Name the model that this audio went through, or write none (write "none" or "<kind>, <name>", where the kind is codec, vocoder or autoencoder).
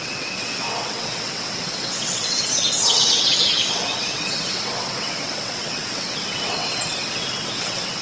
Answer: vocoder, WaveNeXt